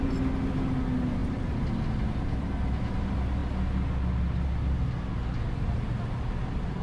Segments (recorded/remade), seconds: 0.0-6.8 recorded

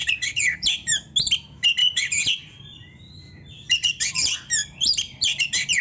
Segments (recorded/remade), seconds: 0.0-1.1 remade; 1.1-1.8 recorded; 1.8-5.3 remade; 5.3-5.8 recorded

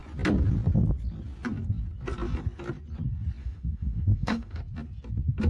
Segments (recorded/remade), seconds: 0.0-3.4 recorded; 3.4-4.6 remade; 4.6-5.5 recorded

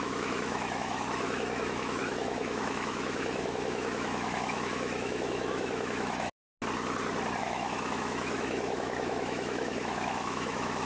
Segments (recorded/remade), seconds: 0.0-6.5 remade; 6.5-7.4 recorded; 7.4-10.9 remade

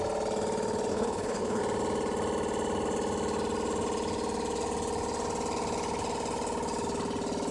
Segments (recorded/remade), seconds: 0.0-0.9 recorded; 0.9-1.6 remade; 1.6-7.5 recorded